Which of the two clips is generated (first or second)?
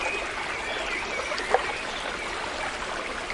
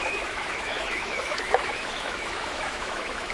second